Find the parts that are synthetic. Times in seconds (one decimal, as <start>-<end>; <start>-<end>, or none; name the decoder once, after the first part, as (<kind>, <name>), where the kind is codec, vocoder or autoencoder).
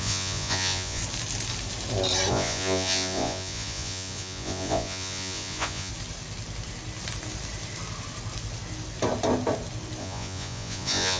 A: 0.0-1.0 (vocoder, Vocos); 2.3-5.9; 10.0-11.2